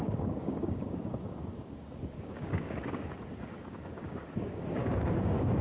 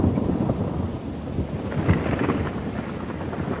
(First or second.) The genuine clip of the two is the second